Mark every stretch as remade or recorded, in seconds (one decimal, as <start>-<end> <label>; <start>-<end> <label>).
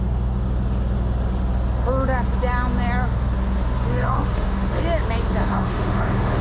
0.0-3.9 recorded; 3.9-4.8 remade; 4.8-5.4 recorded; 5.4-6.4 remade